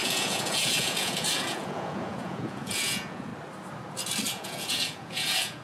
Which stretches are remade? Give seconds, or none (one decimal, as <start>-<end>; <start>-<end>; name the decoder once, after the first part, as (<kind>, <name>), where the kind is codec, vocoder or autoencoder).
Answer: 0.0-3.3 (vocoder, Vocos); 4.3-5.6